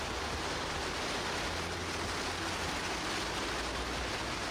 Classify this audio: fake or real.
real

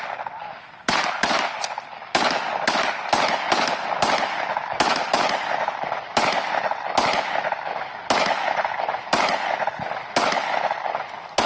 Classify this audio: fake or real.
real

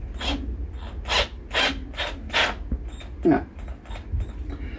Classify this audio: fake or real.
real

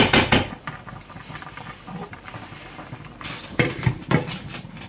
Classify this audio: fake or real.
fake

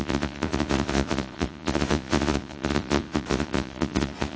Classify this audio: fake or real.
fake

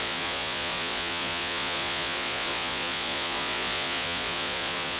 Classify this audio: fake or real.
fake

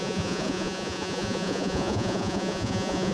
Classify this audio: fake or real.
fake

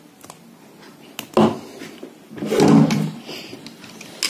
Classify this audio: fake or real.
real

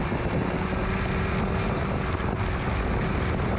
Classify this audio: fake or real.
real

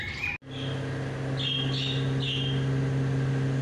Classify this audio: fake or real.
real